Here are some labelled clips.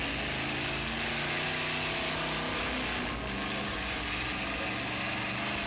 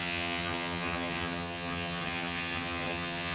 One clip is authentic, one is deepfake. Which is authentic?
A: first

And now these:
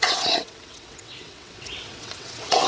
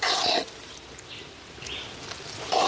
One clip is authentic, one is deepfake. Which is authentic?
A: second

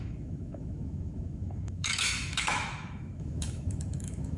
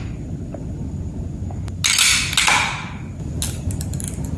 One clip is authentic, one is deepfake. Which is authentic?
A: second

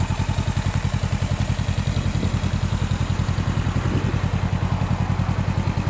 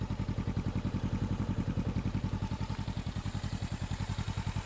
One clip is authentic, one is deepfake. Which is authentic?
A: first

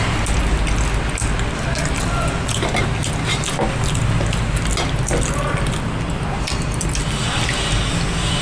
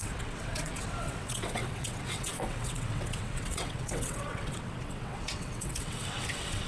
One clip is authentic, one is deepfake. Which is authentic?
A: first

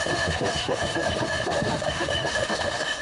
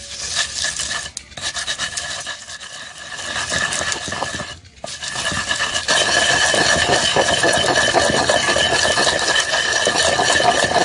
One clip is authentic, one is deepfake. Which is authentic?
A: second